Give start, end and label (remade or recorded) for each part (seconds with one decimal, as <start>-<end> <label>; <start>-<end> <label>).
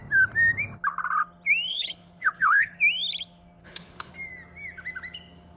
0.0-1.7 recorded; 1.7-2.8 remade; 2.8-3.6 recorded; 3.6-4.1 remade; 4.1-5.6 recorded